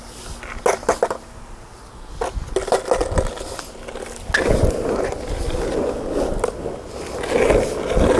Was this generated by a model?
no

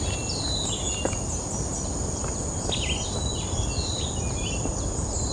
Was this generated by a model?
no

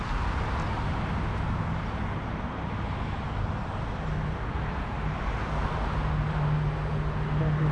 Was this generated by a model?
no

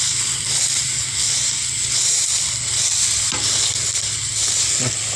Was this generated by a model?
no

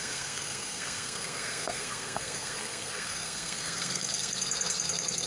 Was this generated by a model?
yes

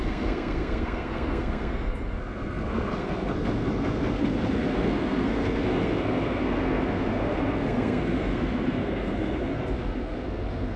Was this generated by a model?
yes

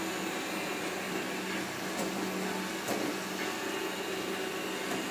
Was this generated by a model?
no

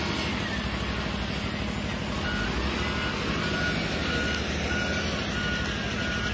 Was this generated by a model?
no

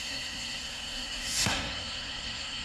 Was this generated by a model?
yes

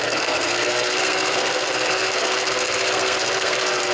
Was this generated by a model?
yes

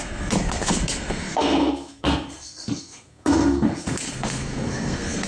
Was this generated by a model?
yes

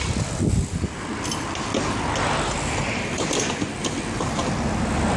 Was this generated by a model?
no